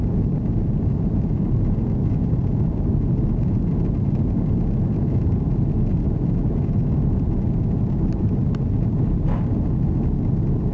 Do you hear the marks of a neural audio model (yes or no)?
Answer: no